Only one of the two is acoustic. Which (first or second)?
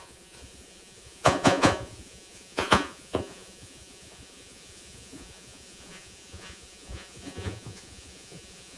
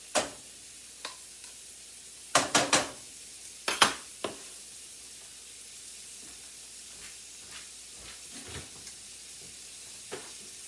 second